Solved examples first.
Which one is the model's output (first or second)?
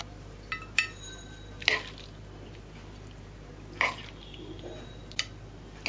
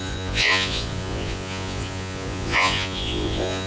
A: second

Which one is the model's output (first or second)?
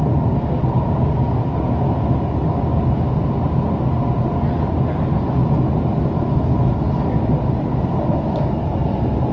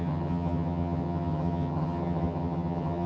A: second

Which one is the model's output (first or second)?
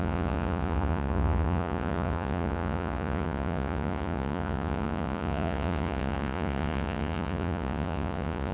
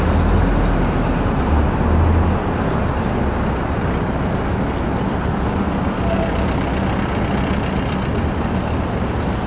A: first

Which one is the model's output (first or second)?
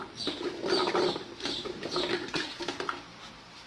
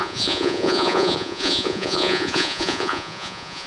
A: second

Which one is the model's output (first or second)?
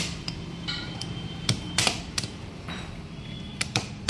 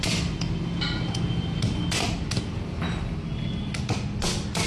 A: first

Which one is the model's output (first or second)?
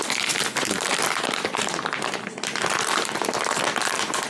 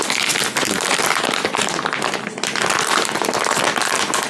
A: first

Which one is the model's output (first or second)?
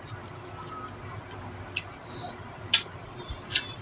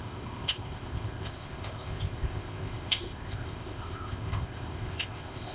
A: second